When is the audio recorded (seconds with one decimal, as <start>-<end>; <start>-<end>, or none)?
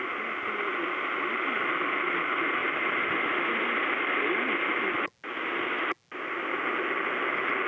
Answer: 0.0-7.7